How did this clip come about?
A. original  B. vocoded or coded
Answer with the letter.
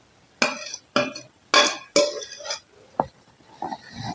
A